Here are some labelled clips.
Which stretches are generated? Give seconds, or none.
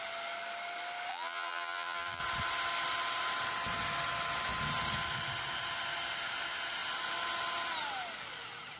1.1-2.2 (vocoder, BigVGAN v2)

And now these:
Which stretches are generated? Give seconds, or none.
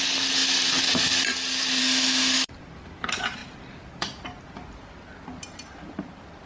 1.8-2.5 (autoencoder, DAC-VAE)